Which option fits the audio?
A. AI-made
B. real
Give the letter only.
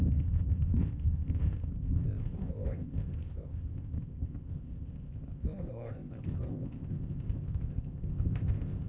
A